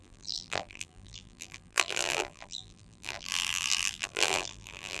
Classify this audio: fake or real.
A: fake